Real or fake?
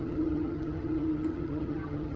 fake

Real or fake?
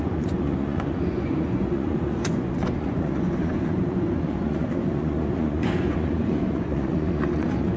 fake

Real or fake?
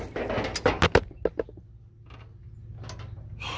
real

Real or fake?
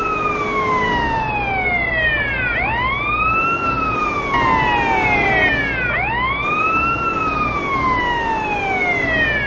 real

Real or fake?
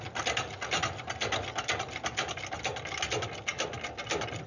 real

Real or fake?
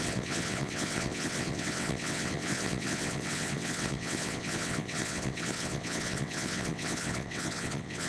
fake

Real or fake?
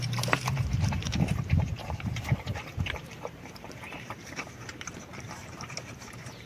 fake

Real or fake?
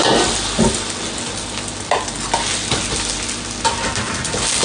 real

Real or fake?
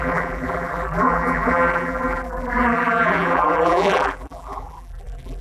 fake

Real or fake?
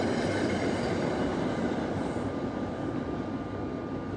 real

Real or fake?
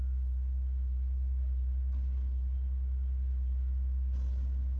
real